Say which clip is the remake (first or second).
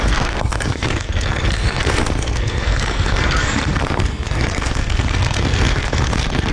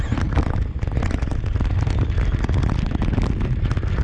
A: first